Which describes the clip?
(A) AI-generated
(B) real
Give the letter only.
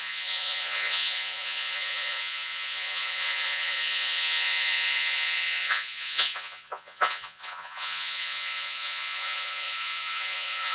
A